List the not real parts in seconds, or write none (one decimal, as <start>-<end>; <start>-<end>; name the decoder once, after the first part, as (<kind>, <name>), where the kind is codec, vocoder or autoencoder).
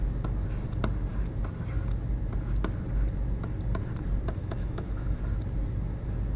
4.4-5.2 (autoencoder, DAC-VAE)